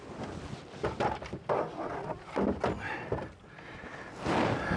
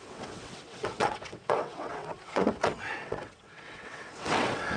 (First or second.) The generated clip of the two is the second